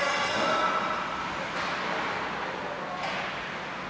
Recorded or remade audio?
recorded